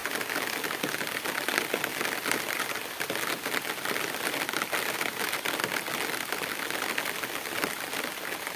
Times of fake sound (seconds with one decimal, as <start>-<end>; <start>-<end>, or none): none

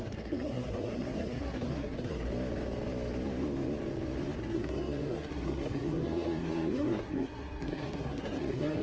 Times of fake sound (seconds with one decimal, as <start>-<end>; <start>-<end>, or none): 0.0-2.3; 4.4-8.8

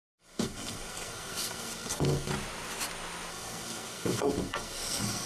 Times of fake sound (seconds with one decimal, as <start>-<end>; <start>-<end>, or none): 0.0-2.3; 3.3-5.3

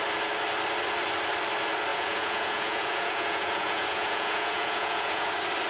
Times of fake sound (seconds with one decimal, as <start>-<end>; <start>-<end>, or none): 1.9-5.3